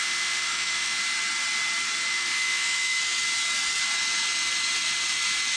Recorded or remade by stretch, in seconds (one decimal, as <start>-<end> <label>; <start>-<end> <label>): 0.0-1.0 remade; 1.0-2.1 recorded; 2.1-3.0 remade; 3.0-5.6 recorded